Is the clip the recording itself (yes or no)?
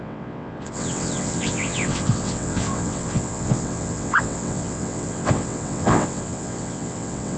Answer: no